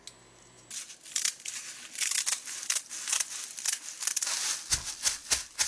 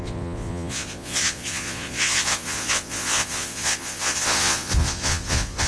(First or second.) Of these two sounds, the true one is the first